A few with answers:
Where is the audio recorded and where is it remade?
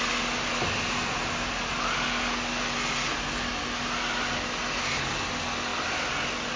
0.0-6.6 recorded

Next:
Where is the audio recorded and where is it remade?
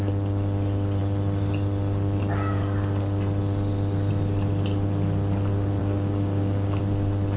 0.0-5.8 recorded; 5.8-6.8 remade; 6.8-7.4 recorded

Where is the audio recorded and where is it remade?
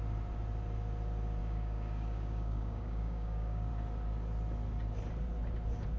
0.0-1.4 recorded; 1.4-3.7 remade; 3.7-6.0 recorded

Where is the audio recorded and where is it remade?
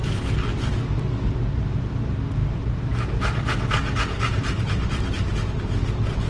0.0-6.3 recorded